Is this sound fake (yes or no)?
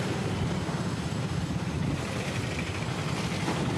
yes